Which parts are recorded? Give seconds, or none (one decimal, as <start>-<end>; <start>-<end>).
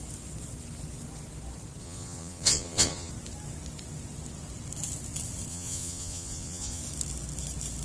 0.0-1.8; 3.1-5.5; 6.8-7.8